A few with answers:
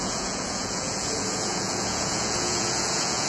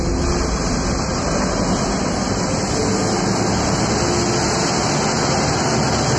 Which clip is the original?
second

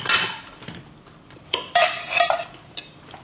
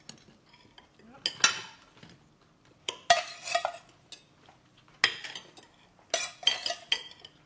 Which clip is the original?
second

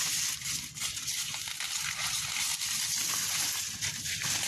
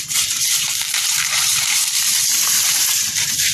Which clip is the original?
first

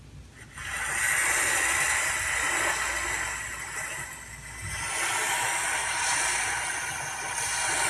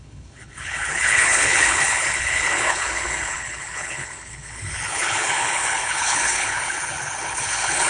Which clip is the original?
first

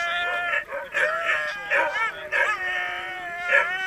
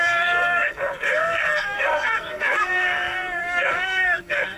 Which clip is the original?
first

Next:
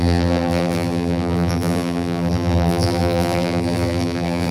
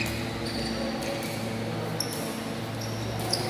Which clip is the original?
second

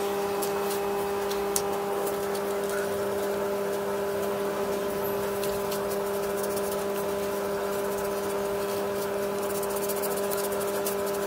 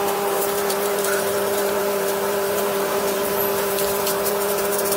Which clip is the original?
first